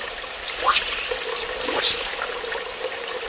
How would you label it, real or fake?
real